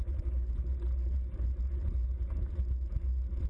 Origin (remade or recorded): recorded